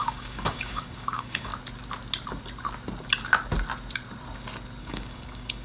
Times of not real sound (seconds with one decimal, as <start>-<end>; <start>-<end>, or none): 0.0-1.5; 4.8-5.6